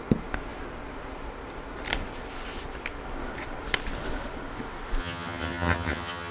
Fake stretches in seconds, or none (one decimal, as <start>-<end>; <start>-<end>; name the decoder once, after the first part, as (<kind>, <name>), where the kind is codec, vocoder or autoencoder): 5.0-6.3 (vocoder, HiFi-GAN)